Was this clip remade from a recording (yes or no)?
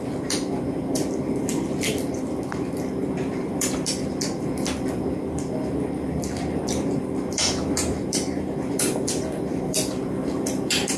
yes